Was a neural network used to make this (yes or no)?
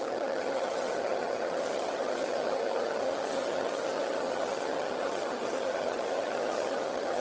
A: yes